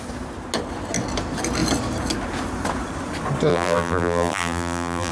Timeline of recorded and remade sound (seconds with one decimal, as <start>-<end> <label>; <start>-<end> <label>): 0.0-3.5 recorded; 3.5-5.1 remade